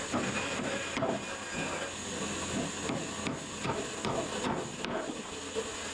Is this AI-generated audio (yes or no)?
no